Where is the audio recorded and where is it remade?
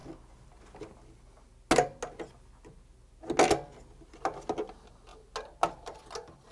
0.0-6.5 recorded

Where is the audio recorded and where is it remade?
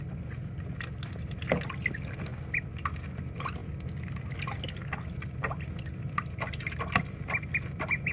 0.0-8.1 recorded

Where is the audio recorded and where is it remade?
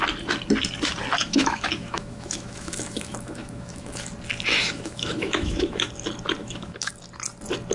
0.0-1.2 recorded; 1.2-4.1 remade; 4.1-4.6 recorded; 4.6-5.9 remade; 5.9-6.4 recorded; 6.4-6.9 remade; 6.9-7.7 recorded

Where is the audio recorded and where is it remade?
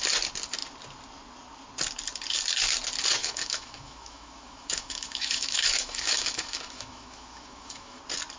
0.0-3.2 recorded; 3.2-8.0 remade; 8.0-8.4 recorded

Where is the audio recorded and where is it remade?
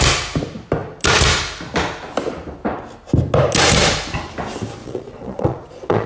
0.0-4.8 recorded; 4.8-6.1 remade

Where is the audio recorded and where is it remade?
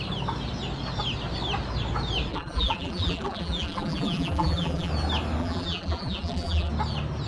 0.0-2.3 recorded; 2.3-4.9 remade; 4.9-5.4 recorded; 5.4-6.7 remade; 6.7-7.3 recorded